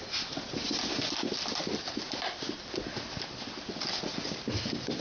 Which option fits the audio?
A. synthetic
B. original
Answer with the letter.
B